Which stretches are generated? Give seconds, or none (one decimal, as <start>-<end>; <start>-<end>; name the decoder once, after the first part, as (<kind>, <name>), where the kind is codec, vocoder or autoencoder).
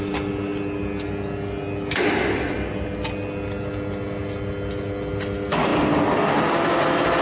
none